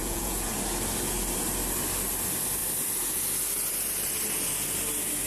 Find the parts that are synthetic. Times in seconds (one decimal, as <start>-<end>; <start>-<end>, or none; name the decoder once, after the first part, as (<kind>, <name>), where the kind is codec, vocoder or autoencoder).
0.0-0.5 (vocoder, Vocos)